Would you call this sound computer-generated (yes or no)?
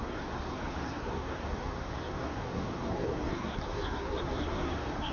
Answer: yes